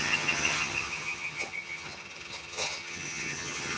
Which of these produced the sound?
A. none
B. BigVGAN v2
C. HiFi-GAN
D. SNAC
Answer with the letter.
C